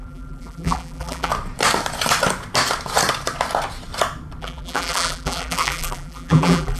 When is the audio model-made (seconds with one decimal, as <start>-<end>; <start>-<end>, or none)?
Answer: 0.0-1.3; 4.4-6.8